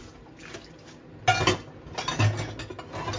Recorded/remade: recorded